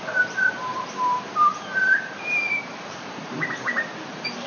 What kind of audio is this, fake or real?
fake